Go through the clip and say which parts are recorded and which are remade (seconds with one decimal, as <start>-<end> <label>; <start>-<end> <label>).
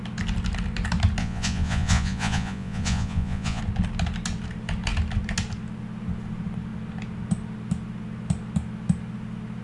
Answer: 0.0-1.2 recorded; 1.2-3.6 remade; 3.6-9.6 recorded